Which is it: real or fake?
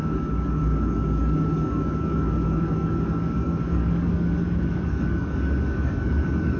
fake